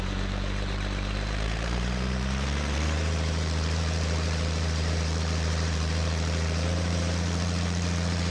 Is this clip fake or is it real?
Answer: fake